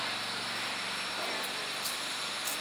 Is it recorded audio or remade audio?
recorded